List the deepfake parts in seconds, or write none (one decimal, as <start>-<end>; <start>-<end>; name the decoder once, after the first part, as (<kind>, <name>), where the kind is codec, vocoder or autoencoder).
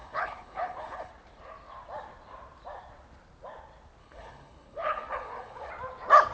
0.0-1.1 (codec, HILCodec); 4.0-5.7